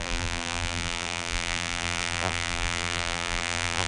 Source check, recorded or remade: remade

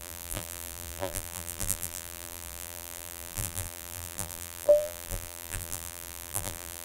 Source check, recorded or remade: remade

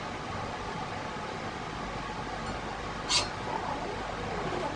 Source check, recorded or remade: recorded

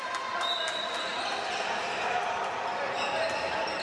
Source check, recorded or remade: remade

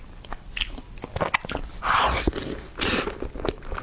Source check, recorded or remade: recorded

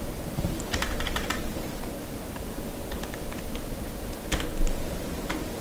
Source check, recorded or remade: remade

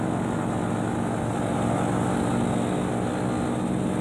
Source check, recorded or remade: recorded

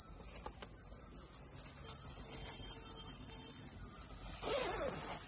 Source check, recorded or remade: recorded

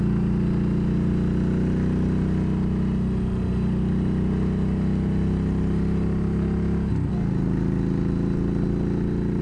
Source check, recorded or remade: recorded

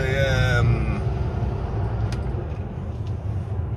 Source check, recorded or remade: recorded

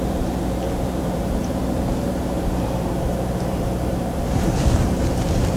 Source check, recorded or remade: remade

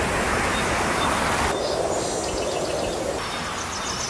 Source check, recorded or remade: recorded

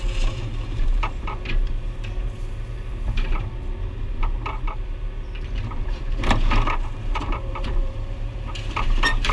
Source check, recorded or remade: remade